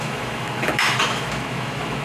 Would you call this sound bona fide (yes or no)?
no